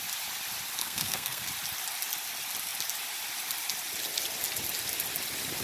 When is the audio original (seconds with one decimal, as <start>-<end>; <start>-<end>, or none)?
0.0-0.8; 1.5-5.6